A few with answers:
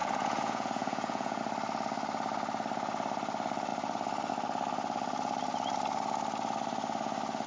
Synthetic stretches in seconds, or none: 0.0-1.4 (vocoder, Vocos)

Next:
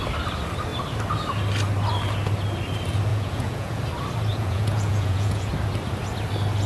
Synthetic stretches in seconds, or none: 3.1-3.8 (vocoder, Vocos); 4.3-5.5

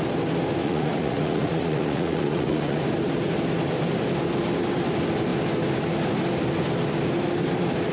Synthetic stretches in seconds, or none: 0.6-2.8 (vocoder, Vocos)

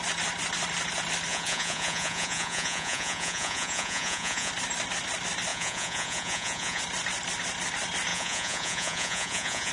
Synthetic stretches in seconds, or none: 1.3-4.5 (vocoder, Vocos); 5.5-6.8; 8.1-9.7